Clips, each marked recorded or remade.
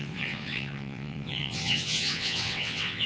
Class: remade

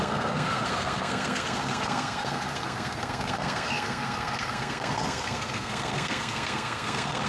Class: remade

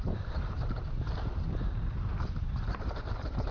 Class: remade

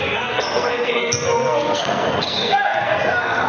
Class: remade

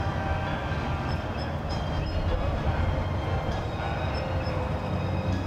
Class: recorded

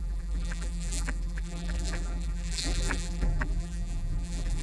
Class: remade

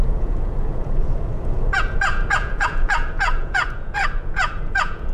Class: remade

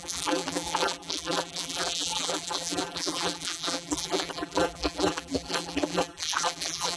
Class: remade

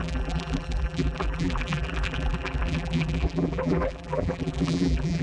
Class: remade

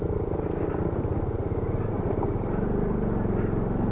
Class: recorded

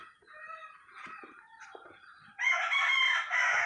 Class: recorded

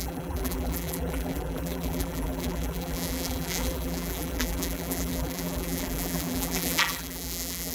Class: remade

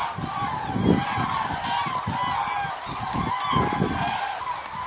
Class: recorded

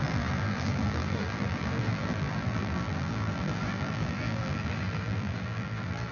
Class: remade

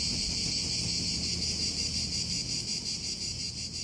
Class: recorded